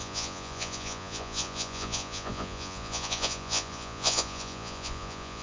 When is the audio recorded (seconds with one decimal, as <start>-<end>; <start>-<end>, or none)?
none